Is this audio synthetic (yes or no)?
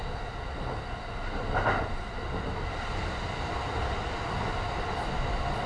no